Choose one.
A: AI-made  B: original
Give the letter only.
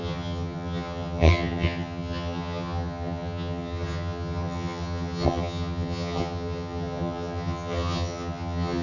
A